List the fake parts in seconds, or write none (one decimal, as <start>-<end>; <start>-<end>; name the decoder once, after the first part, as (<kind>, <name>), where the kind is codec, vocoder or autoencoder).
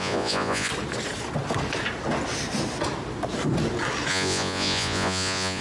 0.0-0.7 (vocoder, Vocos); 4.1-5.6